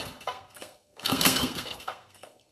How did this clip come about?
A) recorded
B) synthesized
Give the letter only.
B